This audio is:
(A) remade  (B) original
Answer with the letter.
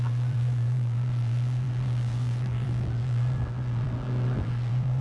A